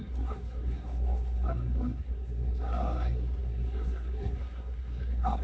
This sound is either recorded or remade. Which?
remade